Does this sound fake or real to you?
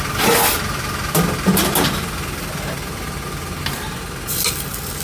real